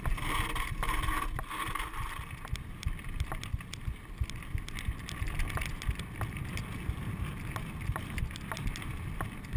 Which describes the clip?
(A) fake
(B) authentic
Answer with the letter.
B